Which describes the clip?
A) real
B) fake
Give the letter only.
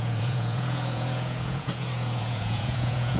B